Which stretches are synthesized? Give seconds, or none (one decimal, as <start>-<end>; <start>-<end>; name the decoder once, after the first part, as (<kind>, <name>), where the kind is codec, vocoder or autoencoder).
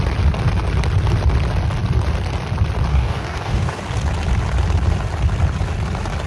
2.9-3.8 (codec, DAC)